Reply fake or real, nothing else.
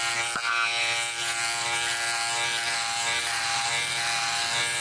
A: real